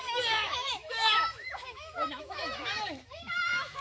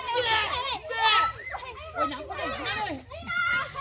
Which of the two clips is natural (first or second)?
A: second